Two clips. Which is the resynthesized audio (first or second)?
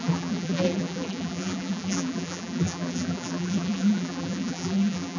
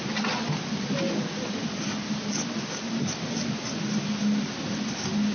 first